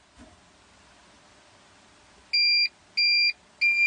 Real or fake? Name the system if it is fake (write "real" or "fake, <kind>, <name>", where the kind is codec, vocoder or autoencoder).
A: real